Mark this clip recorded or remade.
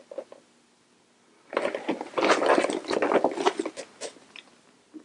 recorded